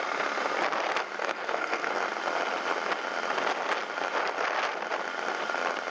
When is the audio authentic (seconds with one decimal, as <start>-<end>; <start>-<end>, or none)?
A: 0.0-1.2; 2.0-5.9